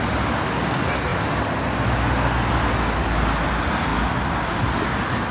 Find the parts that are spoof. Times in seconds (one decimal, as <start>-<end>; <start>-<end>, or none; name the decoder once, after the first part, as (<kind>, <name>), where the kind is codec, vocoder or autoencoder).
none

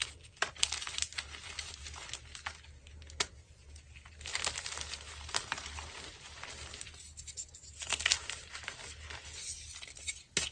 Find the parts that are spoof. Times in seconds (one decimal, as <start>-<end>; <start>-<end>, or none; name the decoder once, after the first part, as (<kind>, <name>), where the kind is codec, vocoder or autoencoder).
none

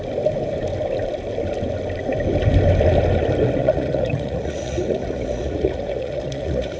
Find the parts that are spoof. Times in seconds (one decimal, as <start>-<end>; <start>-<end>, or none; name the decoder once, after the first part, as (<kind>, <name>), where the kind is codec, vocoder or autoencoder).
3.6-6.8 (vocoder, Vocos)